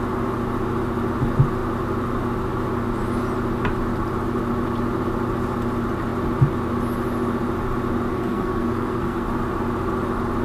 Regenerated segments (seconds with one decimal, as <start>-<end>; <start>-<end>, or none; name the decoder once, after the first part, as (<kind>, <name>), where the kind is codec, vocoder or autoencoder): 8.1-9.3 (codec, SNAC)